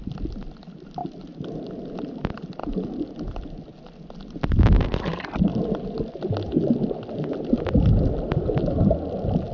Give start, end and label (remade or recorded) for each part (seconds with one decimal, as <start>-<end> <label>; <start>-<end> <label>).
0.0-9.5 recorded